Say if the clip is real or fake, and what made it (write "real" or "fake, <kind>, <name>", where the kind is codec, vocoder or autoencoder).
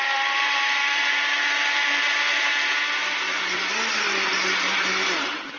fake, vocoder, BigVGAN v2